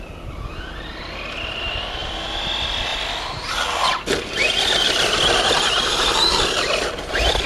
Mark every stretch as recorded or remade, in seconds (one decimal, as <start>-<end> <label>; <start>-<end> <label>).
0.0-2.9 recorded; 2.9-7.0 remade; 7.0-7.5 recorded